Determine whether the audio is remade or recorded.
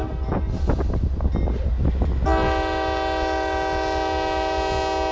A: recorded